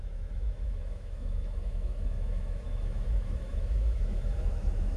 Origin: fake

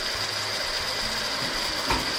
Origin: real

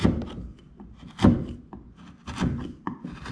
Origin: real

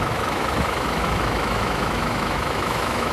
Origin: fake